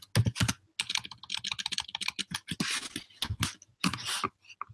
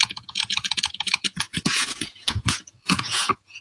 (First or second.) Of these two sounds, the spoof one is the second